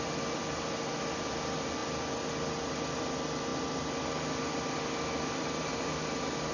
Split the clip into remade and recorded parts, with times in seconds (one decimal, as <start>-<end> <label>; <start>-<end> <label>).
0.0-6.5 recorded